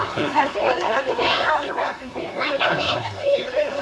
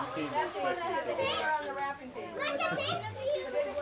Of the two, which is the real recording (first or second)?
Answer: second